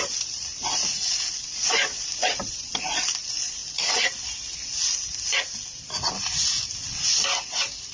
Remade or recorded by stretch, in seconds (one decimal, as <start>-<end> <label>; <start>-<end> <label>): 0.0-0.8 remade; 0.8-2.0 recorded; 2.0-3.6 remade; 3.6-7.4 recorded; 7.4-7.9 remade